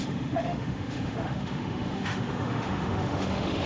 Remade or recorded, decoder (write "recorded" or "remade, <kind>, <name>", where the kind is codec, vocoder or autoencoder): remade, autoencoder, DAC-VAE